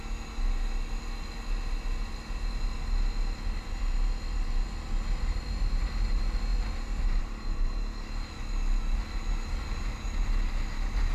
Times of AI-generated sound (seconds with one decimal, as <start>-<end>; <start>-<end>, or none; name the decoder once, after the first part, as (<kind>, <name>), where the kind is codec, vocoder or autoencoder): none